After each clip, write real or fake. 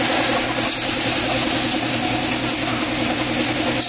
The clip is real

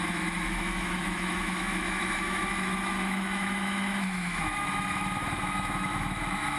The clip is fake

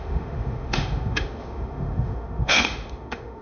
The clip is fake